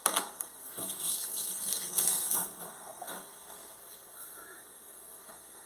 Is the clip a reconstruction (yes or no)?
yes